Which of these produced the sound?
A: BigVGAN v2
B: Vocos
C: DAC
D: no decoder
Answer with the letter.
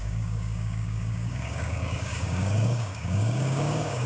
C